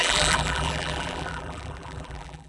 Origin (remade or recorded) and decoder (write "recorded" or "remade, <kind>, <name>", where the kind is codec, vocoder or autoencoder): remade, vocoder, BigVGAN v2